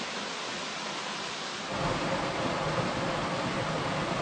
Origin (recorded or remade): recorded